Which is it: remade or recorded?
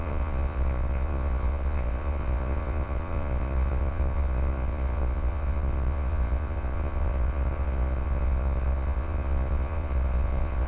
remade